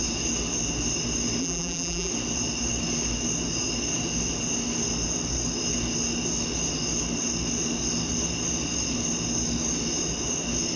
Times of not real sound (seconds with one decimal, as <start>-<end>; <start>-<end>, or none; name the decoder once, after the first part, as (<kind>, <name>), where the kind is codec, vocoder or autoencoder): 1.4-2.1 (vocoder, BigVGAN v2)